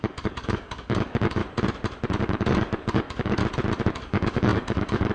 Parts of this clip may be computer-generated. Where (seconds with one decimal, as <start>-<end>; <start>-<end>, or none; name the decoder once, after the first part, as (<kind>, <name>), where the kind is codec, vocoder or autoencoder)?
0.0-1.4 (codec, DAC); 2.2-3.4; 3.9-5.1